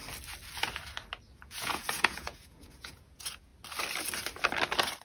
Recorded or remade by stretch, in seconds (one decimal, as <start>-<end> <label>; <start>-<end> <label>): 0.0-1.3 recorded; 1.3-3.5 remade; 3.5-5.0 recorded